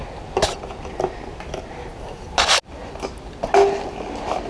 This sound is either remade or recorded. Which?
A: recorded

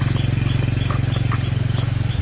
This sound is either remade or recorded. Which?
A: recorded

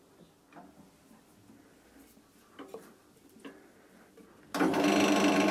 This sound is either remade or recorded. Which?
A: recorded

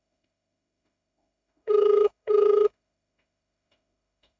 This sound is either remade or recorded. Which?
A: remade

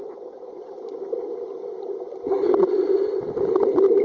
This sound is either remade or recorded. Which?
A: remade